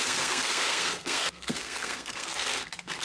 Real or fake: fake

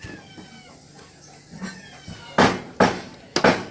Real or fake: real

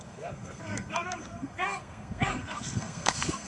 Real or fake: fake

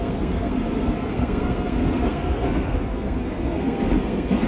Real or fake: fake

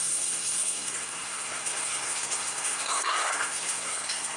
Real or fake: fake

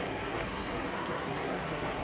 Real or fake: fake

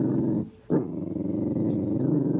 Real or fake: real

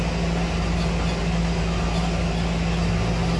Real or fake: real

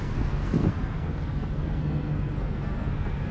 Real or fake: fake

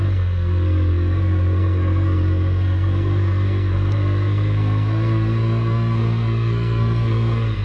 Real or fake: fake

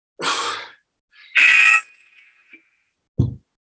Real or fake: real